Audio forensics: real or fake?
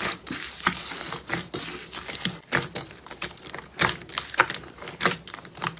real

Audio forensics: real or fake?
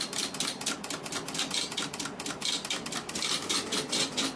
real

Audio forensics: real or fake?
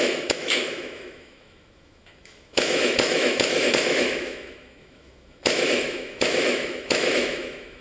fake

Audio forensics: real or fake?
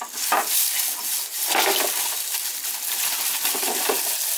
real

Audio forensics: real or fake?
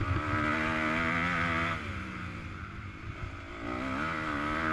real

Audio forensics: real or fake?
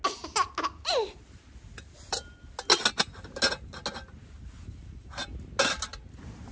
real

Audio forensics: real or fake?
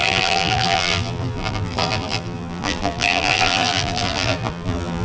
fake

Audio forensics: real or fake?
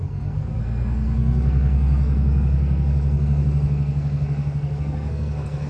fake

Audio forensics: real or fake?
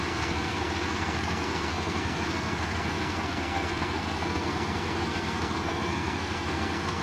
fake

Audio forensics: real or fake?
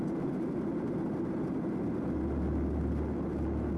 real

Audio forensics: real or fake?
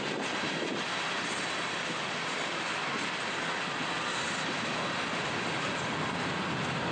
real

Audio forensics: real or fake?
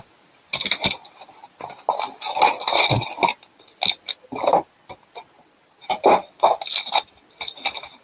real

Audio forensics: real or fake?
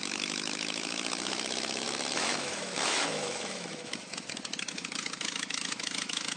fake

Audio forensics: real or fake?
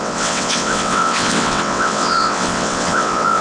fake